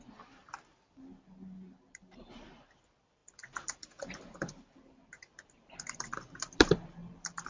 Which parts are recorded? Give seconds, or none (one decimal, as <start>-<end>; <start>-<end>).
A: none